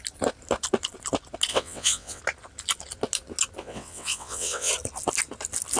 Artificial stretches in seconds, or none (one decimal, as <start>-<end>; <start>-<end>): 1.5-2.2; 3.6-4.7